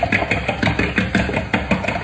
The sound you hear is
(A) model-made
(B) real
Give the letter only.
B